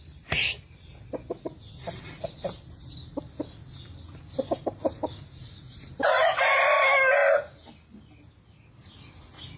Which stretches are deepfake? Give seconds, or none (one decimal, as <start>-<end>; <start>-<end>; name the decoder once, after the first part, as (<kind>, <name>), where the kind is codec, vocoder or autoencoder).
none